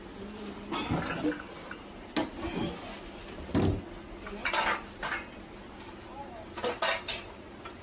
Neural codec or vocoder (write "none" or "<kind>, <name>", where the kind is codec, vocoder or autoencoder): none